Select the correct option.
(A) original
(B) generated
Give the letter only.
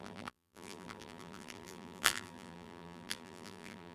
B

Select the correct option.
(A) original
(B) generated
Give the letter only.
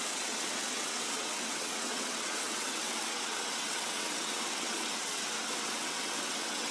B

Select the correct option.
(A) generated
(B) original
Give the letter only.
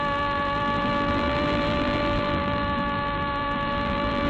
A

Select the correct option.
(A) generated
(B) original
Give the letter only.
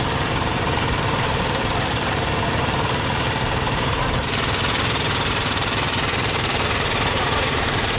A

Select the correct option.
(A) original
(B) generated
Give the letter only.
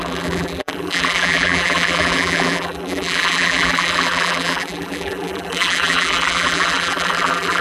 B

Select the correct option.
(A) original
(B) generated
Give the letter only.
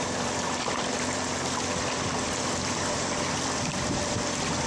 B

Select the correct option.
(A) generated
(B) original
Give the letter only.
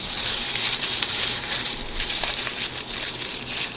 A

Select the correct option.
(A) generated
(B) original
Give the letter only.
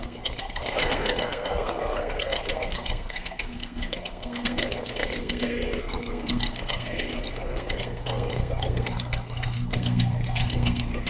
A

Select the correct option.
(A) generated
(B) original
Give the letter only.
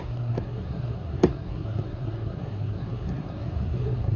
A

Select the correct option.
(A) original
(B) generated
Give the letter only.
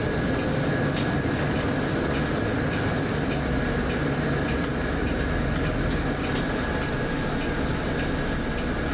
A